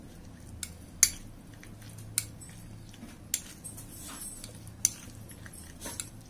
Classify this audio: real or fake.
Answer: real